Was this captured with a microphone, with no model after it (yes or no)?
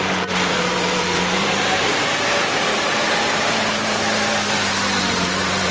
no